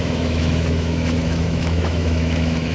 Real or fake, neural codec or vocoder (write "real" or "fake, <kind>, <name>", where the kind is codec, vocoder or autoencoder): fake, autoencoder, DAC-VAE